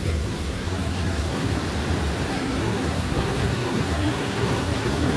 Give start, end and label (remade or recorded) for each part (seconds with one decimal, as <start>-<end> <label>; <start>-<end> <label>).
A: 0.0-1.6 remade; 1.6-2.3 recorded; 2.3-5.2 remade